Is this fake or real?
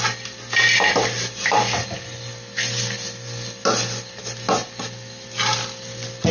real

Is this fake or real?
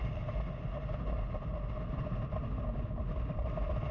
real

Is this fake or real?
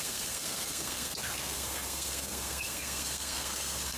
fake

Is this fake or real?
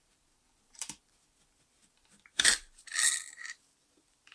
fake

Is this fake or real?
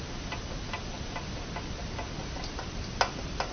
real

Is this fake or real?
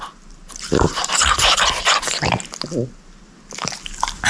real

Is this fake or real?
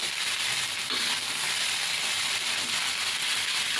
real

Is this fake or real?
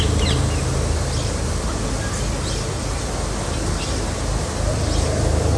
real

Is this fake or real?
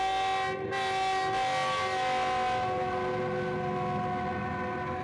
real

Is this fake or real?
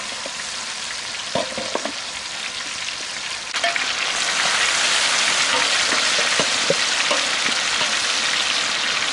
real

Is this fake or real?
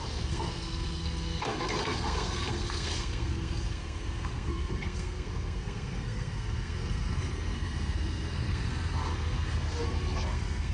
fake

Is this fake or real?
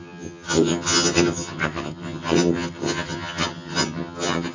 fake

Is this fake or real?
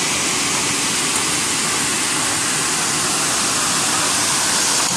real